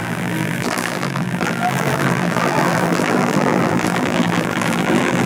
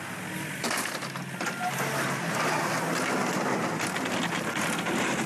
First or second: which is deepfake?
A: first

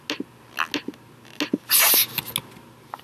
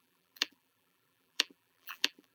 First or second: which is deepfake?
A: second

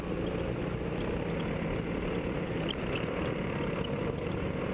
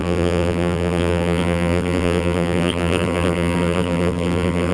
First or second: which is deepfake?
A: second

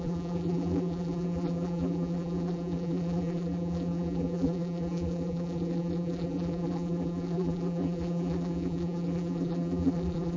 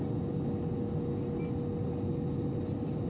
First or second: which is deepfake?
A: first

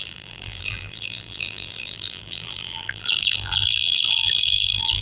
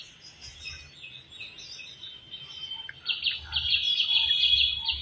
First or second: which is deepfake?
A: first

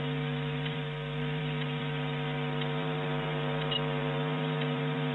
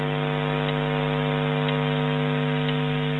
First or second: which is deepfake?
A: first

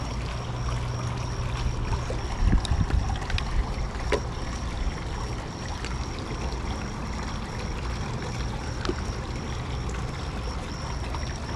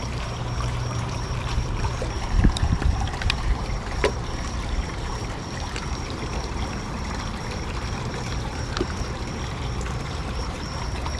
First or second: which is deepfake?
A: second